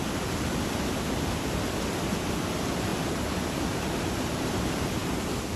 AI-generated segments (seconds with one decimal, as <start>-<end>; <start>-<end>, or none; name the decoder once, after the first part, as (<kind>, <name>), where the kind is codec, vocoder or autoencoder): 2.9-4.2 (vocoder, BigVGAN v2); 5.0-5.6